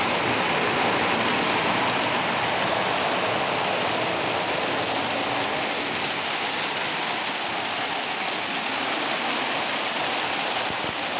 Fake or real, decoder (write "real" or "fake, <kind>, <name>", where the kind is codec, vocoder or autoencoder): real